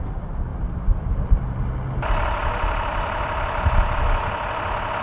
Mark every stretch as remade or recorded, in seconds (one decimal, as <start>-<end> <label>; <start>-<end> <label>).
0.0-0.5 recorded; 0.5-1.6 remade; 1.6-2.9 recorded; 2.9-4.5 remade; 4.5-5.0 recorded